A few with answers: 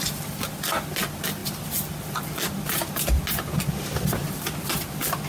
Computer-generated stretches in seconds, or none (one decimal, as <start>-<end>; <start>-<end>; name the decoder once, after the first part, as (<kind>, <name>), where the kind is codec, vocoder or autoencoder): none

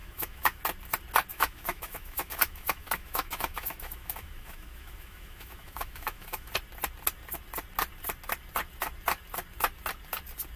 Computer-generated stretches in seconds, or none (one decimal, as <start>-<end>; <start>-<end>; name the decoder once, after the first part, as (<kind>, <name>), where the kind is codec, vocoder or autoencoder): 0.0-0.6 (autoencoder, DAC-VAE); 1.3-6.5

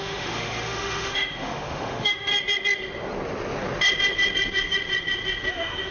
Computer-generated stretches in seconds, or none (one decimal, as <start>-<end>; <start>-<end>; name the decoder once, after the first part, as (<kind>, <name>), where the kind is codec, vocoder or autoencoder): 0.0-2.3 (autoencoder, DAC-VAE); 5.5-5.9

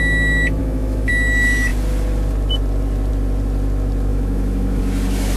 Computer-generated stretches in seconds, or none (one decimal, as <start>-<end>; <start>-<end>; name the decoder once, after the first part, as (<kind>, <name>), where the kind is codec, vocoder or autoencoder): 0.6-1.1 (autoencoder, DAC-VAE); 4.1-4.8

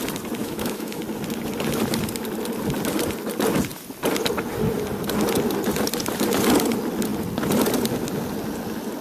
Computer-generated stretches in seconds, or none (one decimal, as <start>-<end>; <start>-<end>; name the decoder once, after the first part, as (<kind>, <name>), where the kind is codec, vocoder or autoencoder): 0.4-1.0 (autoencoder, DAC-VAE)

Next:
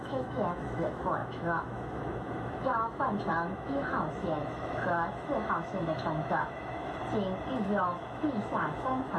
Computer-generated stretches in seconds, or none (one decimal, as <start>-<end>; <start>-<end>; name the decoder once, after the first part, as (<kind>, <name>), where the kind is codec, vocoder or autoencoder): 0.0-7.0 (autoencoder, DAC-VAE); 7.6-9.2

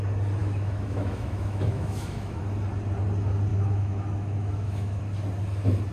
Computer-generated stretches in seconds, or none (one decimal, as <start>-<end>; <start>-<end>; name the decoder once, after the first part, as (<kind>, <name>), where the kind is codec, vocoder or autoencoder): 0.4-2.4 (autoencoder, DAC-VAE); 3.5-5.0